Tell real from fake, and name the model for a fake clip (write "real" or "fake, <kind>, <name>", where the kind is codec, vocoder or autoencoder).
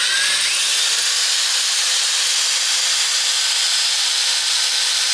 real